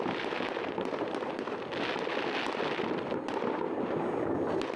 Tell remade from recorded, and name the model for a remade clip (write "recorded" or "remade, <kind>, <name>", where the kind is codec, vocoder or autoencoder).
recorded